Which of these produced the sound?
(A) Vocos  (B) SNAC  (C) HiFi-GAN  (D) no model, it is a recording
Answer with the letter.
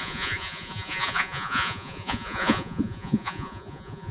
A